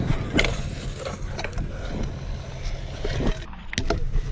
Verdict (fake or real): real